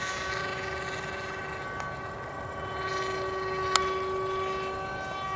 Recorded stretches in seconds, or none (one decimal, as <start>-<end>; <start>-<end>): 0.0-5.4